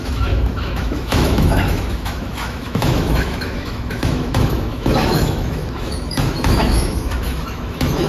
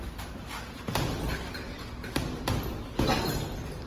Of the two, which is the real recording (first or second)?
second